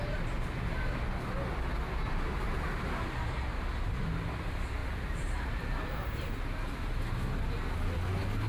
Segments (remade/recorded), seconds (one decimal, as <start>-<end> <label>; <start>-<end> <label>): 0.0-4.8 recorded; 4.8-6.1 remade; 6.1-8.5 recorded

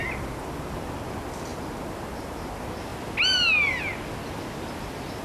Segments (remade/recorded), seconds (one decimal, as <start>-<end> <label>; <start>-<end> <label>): 0.0-5.2 recorded